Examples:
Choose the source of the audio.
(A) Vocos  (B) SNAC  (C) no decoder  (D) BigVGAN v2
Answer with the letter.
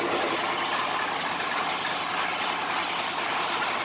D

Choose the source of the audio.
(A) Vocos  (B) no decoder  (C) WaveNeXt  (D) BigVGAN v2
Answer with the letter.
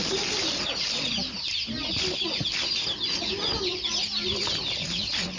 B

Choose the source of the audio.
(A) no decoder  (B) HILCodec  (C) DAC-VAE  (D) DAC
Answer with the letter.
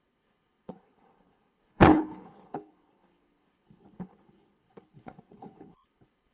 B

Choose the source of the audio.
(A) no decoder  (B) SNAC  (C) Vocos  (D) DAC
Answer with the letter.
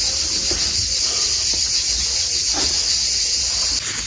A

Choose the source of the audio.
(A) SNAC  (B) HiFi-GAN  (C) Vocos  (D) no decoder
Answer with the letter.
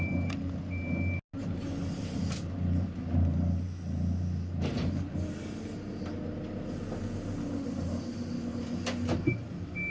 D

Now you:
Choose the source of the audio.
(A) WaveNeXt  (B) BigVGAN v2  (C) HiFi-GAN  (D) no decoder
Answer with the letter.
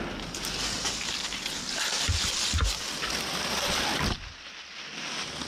D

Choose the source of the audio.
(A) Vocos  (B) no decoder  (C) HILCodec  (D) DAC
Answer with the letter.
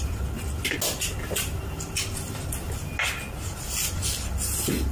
B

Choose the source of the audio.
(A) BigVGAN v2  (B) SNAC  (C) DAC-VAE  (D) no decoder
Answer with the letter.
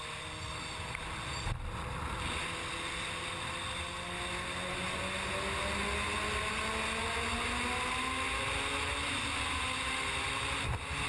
D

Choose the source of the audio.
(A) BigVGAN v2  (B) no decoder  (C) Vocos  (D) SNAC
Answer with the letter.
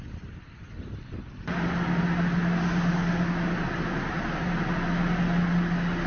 B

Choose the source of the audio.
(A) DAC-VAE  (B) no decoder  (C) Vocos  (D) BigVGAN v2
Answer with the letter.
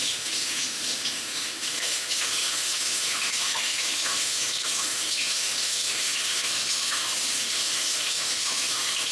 A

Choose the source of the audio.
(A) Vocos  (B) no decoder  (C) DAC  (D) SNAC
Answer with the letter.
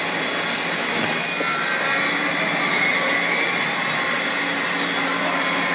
B